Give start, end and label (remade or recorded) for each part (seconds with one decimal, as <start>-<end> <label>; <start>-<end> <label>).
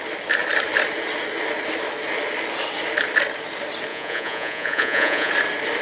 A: 0.0-3.9 recorded; 3.9-5.3 remade; 5.3-5.8 recorded